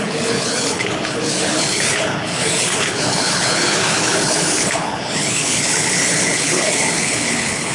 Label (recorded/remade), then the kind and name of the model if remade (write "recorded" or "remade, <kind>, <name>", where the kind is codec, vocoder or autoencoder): remade, codec, HILCodec